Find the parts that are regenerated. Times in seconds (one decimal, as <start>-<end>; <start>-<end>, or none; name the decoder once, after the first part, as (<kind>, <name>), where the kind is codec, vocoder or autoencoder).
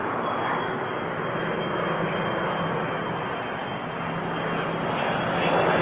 none